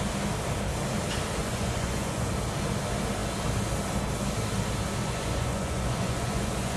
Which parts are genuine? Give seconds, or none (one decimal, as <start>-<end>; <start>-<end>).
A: 0.0-1.4; 2.3-5.0